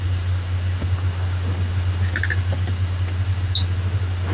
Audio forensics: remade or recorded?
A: recorded